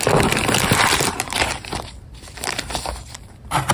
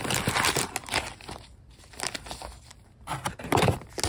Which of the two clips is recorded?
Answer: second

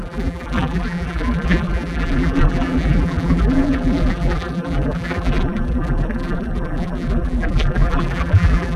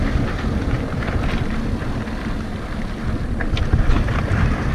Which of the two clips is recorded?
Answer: second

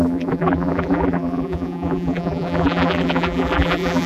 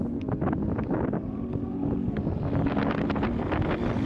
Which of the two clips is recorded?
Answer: second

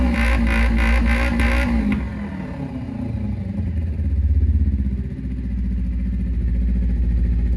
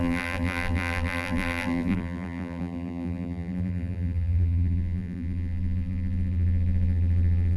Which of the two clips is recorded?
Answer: first